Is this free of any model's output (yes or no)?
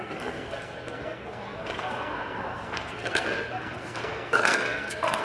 no